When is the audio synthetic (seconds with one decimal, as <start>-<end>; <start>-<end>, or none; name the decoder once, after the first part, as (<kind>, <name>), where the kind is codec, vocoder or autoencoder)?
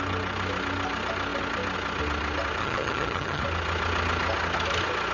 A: 2.6-3.4 (vocoder, HiFi-GAN)